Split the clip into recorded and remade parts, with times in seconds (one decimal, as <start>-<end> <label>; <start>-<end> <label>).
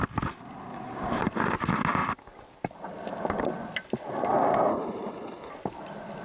0.0-4.7 recorded; 4.7-5.5 remade; 5.5-6.2 recorded